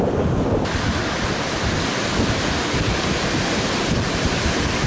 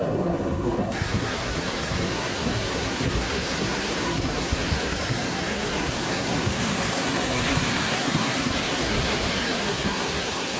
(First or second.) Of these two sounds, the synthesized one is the second